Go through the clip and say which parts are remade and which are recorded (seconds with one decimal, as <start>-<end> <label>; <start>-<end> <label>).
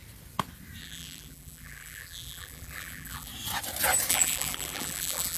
0.0-0.8 recorded; 0.8-3.3 remade; 3.3-4.1 recorded; 4.1-5.4 remade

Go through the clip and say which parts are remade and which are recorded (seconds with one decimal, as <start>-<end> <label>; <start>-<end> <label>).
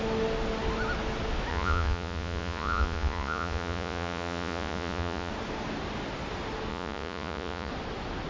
0.0-1.5 recorded; 1.5-5.3 remade; 5.3-6.7 recorded; 6.7-7.7 remade; 7.7-8.3 recorded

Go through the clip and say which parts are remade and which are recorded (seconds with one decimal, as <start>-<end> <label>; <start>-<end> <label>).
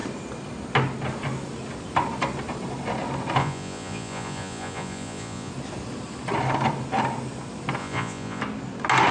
0.0-3.4 recorded; 3.4-5.5 remade; 5.5-7.8 recorded; 7.8-8.4 remade; 8.4-9.1 recorded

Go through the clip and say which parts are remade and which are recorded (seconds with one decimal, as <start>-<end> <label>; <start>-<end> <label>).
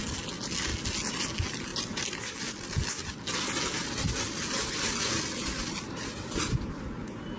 0.0-7.4 recorded